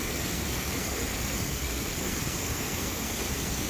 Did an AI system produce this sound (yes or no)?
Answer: yes